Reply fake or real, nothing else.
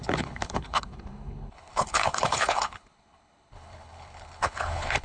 fake